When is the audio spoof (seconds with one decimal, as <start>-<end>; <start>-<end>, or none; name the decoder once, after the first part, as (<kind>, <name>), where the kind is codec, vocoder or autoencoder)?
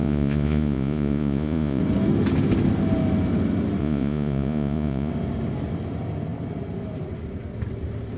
0.0-1.8 (vocoder, Vocos); 3.8-5.1